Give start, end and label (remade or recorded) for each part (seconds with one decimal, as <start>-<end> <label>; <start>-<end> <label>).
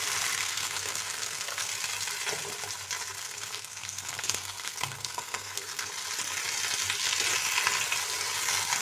0.0-0.4 recorded; 0.4-1.7 remade; 1.7-3.2 recorded; 3.2-5.9 remade; 5.9-8.8 recorded